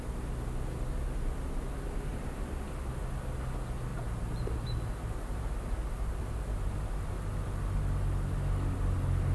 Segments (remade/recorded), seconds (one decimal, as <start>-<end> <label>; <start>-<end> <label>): 0.0-3.9 recorded; 3.9-7.1 remade; 7.1-9.3 recorded